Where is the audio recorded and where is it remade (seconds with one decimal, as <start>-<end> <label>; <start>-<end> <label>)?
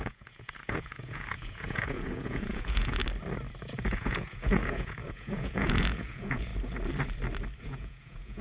0.0-3.0 remade; 3.0-3.6 recorded; 3.6-6.5 remade; 6.5-7.6 recorded; 7.6-8.4 remade